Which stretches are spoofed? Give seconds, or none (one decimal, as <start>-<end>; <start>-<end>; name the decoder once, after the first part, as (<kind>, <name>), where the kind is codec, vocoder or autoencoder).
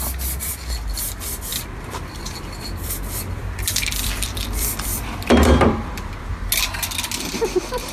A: 1.5-6.2 (vocoder, BigVGAN v2)